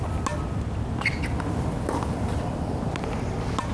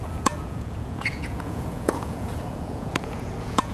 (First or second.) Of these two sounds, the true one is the first